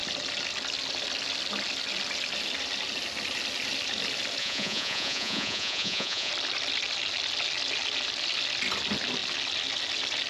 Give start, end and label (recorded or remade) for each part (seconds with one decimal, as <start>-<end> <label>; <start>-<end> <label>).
0.0-4.4 recorded; 4.4-6.3 remade; 6.3-10.3 recorded